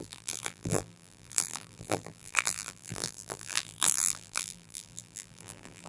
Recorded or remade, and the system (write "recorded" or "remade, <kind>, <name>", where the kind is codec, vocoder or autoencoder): remade, vocoder, BigVGAN v2